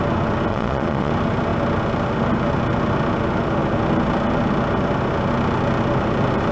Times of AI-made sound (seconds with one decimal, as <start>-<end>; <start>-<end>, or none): 0.5-1.1